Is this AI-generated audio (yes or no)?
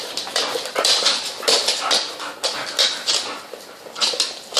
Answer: no